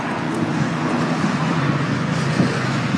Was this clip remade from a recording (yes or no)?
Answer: yes